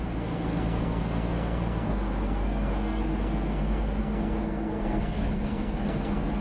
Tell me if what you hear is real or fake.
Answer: fake